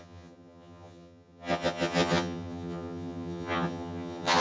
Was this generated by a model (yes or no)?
yes